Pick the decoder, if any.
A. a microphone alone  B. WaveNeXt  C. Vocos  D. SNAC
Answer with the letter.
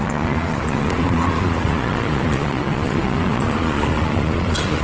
C